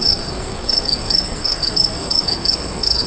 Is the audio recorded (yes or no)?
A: no